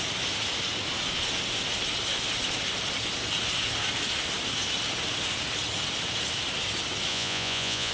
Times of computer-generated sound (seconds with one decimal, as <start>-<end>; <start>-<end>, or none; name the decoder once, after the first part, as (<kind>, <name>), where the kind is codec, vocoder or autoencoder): 7.1-7.9 (vocoder, Vocos)